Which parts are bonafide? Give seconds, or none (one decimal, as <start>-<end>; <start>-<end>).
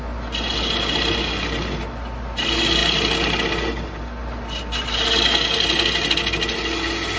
0.0-7.2